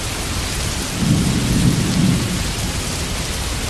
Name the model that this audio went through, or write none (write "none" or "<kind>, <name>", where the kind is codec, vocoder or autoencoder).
none